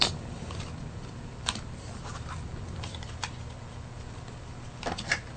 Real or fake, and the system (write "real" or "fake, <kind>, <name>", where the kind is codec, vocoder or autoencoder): fake, vocoder, BigVGAN v2